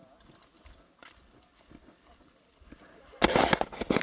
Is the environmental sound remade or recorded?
recorded